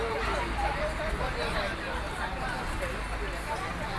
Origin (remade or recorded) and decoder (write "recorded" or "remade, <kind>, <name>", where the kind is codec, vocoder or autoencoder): recorded